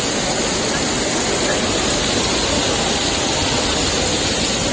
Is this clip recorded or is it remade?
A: recorded